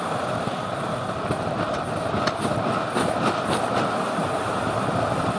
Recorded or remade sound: recorded